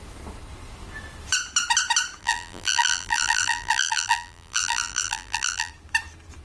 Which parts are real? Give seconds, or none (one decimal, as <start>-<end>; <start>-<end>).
0.0-2.2; 5.7-6.4